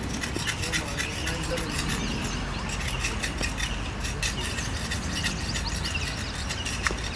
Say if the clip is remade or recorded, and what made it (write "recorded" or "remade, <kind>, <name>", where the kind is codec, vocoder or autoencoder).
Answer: recorded